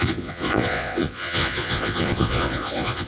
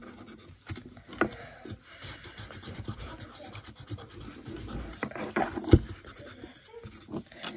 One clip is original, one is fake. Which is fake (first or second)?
first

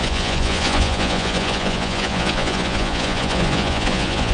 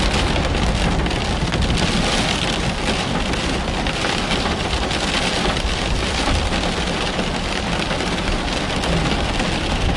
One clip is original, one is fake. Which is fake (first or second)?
first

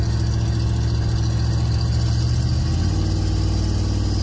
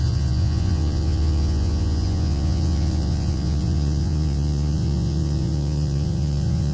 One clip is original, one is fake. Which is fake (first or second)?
second